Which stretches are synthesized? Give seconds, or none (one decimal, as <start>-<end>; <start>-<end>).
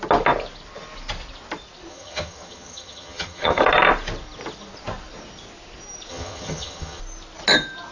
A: 1.9-3.6; 6.1-7.0